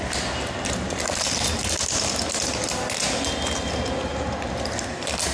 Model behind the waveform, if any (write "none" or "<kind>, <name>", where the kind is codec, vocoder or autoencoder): none